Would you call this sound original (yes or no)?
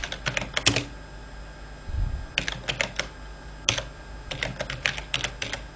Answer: yes